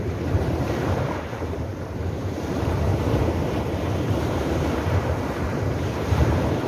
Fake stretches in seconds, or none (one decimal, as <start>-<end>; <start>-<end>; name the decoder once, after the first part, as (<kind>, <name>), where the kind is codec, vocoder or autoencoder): 0.0-2.9 (vocoder, BigVGAN v2); 4.1-6.7